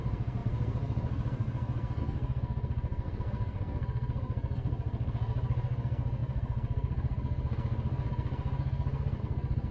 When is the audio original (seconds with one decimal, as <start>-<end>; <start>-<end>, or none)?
none